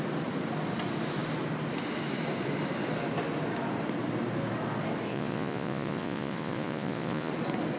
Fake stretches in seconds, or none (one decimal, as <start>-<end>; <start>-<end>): 5.1-7.3